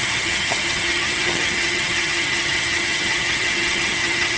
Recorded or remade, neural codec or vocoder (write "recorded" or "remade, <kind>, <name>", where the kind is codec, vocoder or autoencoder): remade, vocoder, HiFi-GAN